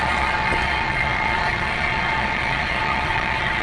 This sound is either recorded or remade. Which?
remade